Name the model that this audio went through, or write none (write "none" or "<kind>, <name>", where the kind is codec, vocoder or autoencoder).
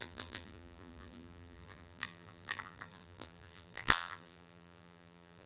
vocoder, BigVGAN v2